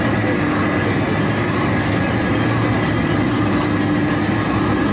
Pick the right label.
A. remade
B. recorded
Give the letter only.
B